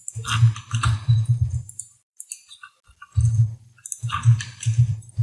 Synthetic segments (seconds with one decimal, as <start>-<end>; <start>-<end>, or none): 0.7-2.6; 3.9-5.2